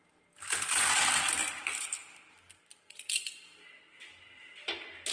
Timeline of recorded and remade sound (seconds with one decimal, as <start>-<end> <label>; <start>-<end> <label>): 0.0-5.1 recorded